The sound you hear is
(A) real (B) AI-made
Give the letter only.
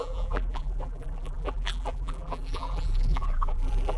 B